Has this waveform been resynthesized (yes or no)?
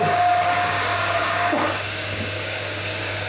yes